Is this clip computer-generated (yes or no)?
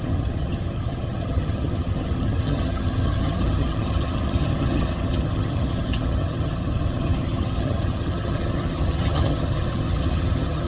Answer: yes